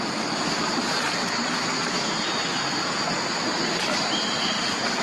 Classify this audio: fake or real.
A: fake